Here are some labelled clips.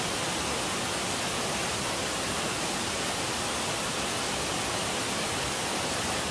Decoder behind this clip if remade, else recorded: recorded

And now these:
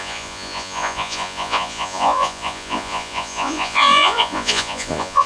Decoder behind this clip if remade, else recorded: remade, vocoder, Vocos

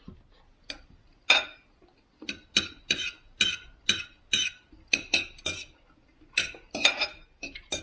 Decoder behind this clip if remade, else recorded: recorded